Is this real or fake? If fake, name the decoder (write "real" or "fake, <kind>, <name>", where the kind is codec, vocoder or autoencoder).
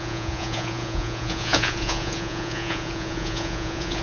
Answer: fake, vocoder, Vocos